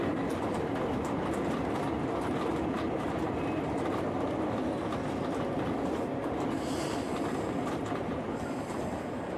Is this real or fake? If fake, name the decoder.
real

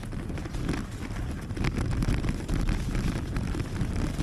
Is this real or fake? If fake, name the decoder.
real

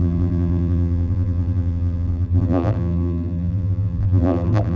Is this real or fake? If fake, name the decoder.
fake, vocoder, BigVGAN v2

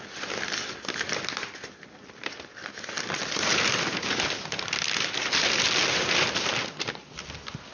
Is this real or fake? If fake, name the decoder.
real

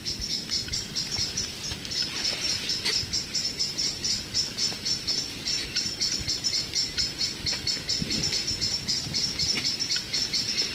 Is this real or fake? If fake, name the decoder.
real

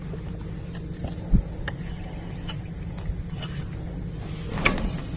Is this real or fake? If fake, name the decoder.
real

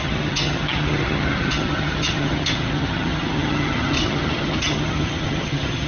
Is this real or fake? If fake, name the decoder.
fake, vocoder, HiFi-GAN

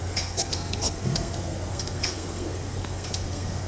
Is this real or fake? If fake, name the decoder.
fake, codec, SNAC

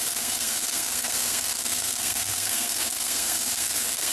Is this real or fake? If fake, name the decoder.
fake, codec, SNAC